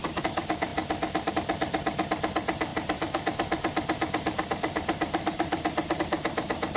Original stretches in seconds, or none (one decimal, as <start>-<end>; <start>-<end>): 0.0-2.7; 6.0-6.8